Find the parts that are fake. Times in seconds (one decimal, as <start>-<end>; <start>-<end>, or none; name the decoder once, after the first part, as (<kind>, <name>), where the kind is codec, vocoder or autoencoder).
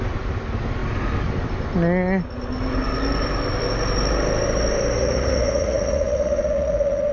5.0-7.1 (vocoder, Vocos)